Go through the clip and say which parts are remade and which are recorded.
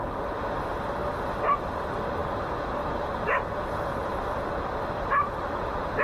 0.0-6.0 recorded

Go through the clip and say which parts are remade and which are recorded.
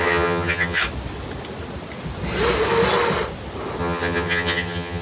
0.0-0.8 remade; 0.8-3.8 recorded; 3.8-5.0 remade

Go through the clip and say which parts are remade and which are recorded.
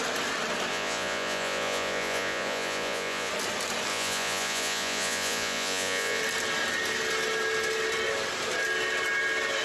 0.0-0.7 recorded; 0.7-3.3 remade; 3.3-3.9 recorded; 3.9-6.2 remade; 6.2-9.6 recorded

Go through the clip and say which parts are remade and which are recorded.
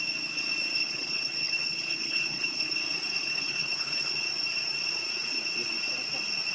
0.0-0.8 recorded; 0.8-2.7 remade; 2.7-3.2 recorded; 3.2-4.1 remade; 4.1-6.5 recorded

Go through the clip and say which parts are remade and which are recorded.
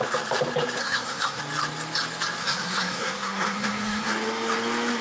0.0-0.8 recorded; 0.8-1.4 remade; 1.4-2.4 recorded; 2.4-4.1 remade; 4.1-5.0 recorded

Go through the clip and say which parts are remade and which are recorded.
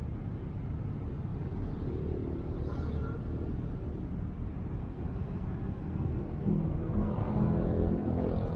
0.0-4.8 recorded; 4.8-8.2 remade; 8.2-8.6 recorded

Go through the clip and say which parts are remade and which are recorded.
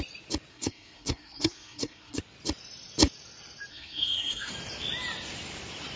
0.0-0.5 recorded; 0.5-2.2 remade; 2.2-3.7 recorded; 3.7-4.5 remade; 4.5-6.0 recorded